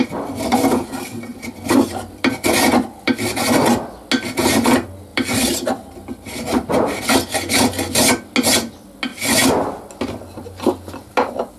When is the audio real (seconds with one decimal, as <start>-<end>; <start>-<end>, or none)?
0.0-1.3; 2.3-5.1; 7.0-9.1; 9.9-11.6